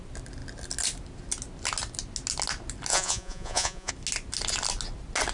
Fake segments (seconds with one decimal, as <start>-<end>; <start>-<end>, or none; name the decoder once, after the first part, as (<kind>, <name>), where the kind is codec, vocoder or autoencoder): 2.9-3.9 (vocoder, Vocos)